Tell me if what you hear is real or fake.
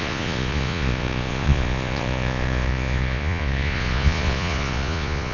fake